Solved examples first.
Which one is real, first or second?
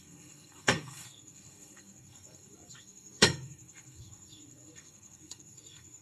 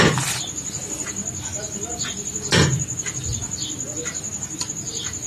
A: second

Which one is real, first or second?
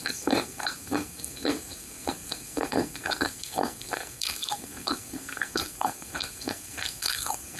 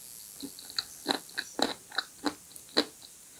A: second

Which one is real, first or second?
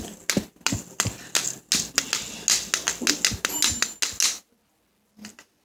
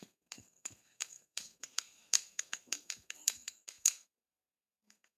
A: first